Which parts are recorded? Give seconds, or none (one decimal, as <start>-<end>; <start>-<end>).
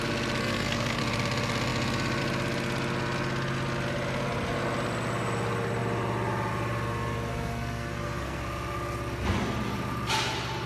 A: 0.0-0.4; 1.0-7.3; 8.4-10.7